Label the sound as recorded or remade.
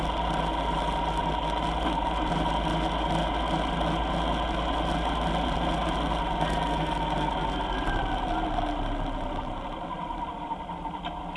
recorded